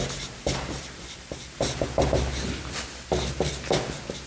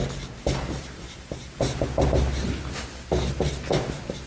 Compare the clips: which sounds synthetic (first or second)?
first